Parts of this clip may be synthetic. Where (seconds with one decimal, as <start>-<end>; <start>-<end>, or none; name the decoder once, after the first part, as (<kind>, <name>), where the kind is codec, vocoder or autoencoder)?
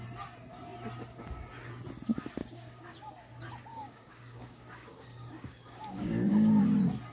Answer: 2.4-3.1 (codec, DAC); 3.7-6.6